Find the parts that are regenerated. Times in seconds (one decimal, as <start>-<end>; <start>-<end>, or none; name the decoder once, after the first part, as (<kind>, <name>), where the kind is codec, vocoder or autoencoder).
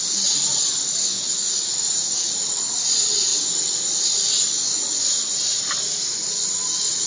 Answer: 1.1-2.3 (codec, DAC)